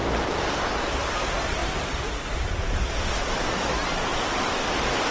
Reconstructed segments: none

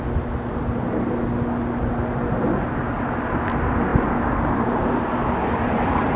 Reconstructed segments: none

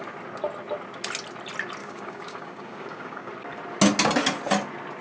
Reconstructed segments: 1.8-3.3 (codec, DAC)

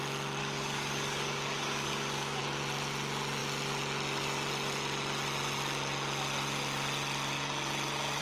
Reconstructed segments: 0.4-2.4 (codec, DAC)

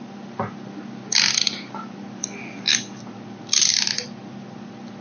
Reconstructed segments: 2.2-3.0 (codec, DAC)

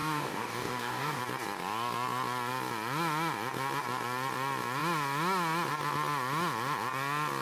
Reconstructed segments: 0.0-1.2 (codec, DAC)

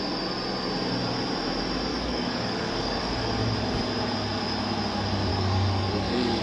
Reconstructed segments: 1.9-3.0 (codec, DAC); 5.3-6.4